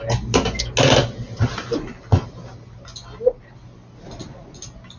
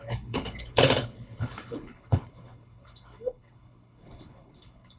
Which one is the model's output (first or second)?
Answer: second